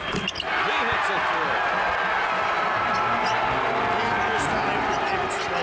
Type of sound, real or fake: real